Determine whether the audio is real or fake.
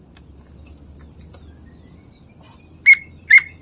real